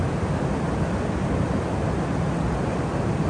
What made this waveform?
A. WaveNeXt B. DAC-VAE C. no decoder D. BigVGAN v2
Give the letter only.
C